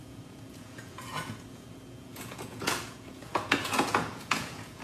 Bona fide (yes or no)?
no